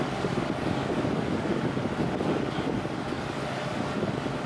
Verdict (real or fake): fake